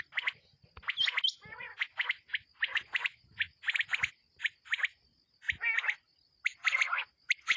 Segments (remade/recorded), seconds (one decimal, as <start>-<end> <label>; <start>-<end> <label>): 0.0-7.6 recorded